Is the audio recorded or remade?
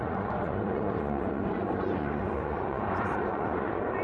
remade